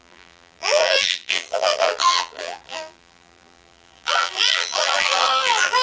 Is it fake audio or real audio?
fake